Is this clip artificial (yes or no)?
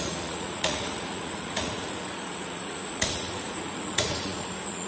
yes